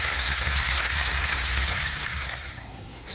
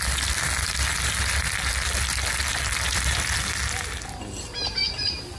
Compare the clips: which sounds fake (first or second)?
first